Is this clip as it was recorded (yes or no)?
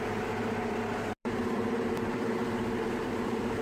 no